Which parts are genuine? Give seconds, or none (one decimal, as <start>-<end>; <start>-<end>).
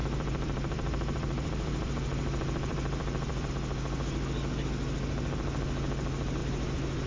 3.5-6.4